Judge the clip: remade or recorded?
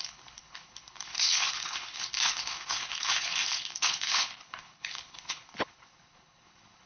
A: remade